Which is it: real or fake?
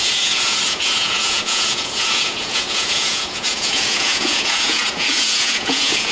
fake